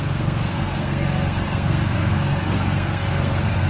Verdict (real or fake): fake